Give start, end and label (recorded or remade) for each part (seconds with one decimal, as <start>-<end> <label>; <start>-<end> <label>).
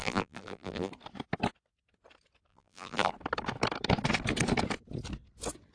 0.0-0.9 remade; 0.9-2.5 recorded; 2.5-3.1 remade; 3.1-5.7 recorded